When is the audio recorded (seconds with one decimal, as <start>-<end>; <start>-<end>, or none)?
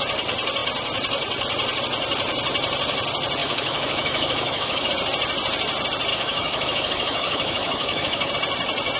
0.0-3.4; 4.9-6.1; 8.3-9.0